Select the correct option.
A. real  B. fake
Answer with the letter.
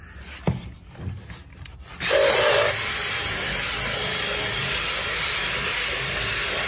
A